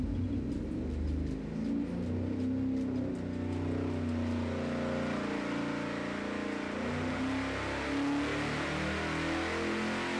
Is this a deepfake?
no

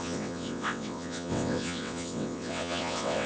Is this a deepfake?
yes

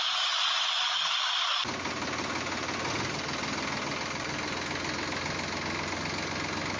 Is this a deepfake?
no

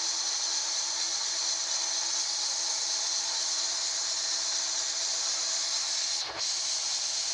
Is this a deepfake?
no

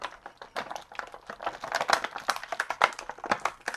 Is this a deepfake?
no